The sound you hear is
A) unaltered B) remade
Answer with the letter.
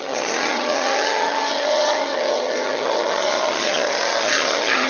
B